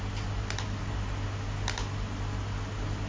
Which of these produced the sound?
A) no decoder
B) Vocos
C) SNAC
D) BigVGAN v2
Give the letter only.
A